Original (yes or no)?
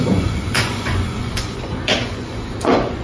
no